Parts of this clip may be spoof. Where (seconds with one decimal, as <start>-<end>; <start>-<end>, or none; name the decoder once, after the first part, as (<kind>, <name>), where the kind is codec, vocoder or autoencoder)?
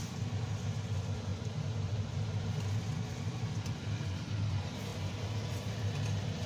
none